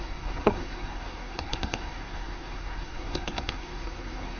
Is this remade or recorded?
remade